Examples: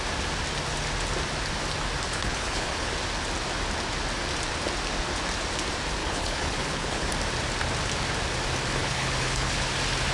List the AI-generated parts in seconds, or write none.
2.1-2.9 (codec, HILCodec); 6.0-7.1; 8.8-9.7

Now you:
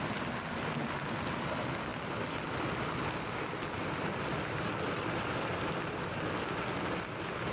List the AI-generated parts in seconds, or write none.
none

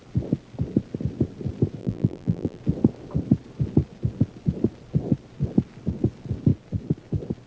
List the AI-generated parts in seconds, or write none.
1.8-2.6 (vocoder, BigVGAN v2)

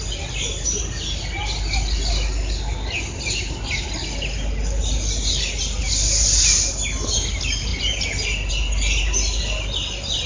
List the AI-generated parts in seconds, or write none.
none